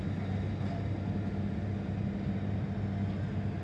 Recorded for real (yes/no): yes